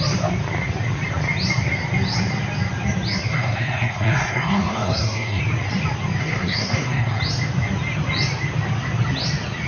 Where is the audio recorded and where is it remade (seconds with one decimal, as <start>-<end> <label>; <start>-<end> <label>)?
0.0-3.3 recorded; 3.3-5.4 remade; 5.4-6.2 recorded; 6.2-7.2 remade; 7.2-9.7 recorded